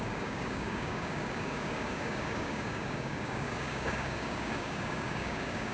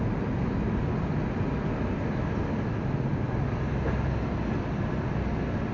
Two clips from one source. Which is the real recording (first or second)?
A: second